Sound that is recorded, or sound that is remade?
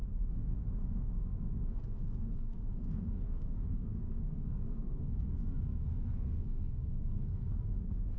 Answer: remade